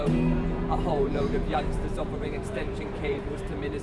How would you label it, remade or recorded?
remade